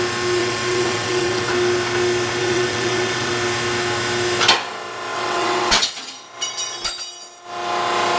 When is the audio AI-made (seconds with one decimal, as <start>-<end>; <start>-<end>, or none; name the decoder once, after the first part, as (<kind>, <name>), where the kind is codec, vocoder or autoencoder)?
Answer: 0.4-1.5 (vocoder, WaveNeXt); 2.4-3.3; 5.1-6.1